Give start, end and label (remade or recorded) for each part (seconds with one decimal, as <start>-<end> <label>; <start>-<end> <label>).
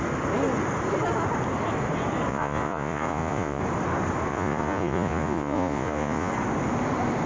0.0-2.3 recorded; 2.3-3.6 remade; 3.6-4.3 recorded; 4.3-6.3 remade; 6.3-7.3 recorded